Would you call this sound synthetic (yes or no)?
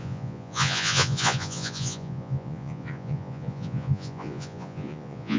yes